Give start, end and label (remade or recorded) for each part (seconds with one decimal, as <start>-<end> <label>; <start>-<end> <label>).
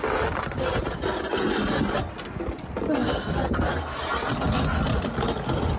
0.0-5.8 recorded